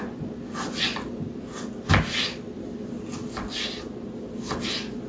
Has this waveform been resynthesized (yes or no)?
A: no